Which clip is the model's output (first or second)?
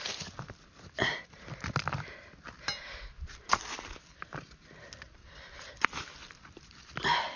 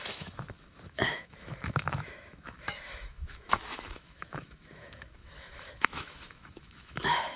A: second